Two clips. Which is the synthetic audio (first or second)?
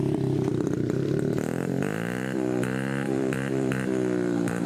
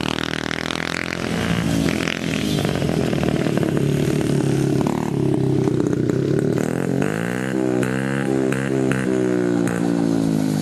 first